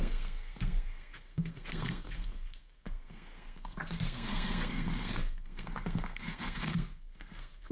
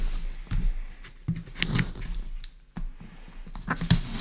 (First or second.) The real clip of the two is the second